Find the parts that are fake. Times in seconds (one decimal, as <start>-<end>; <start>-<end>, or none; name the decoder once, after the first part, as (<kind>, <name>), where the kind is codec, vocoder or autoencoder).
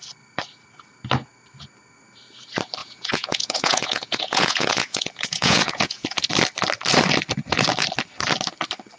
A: 2.8-6.3 (vocoder, Vocos)